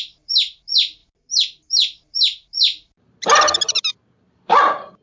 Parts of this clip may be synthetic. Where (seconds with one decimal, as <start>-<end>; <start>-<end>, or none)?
none